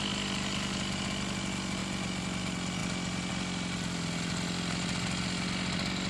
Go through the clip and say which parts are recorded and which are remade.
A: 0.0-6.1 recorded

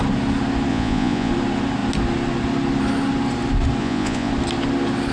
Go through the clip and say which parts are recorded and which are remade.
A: 0.0-0.7 recorded; 0.7-1.3 remade; 1.3-3.8 recorded; 3.8-4.3 remade; 4.3-5.1 recorded

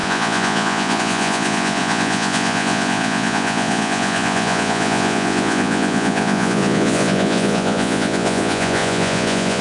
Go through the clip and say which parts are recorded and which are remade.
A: 0.0-9.6 remade

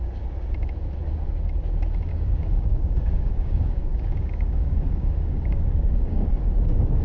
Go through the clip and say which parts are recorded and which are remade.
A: 0.0-2.1 recorded; 2.1-6.3 remade; 6.3-7.0 recorded

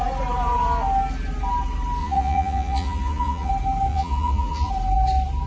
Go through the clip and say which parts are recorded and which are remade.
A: 0.0-2.0 recorded; 2.0-3.5 remade; 3.5-3.9 recorded; 3.9-4.7 remade; 4.7-5.5 recorded